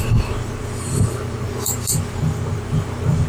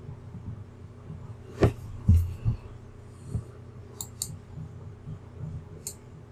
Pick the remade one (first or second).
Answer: first